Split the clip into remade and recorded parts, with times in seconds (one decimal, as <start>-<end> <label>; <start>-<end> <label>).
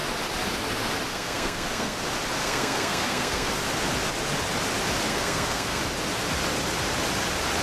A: 0.0-1.1 recorded; 1.1-2.0 remade; 2.0-2.4 recorded; 2.4-3.5 remade; 3.5-5.1 recorded; 5.1-5.8 remade; 5.8-7.6 recorded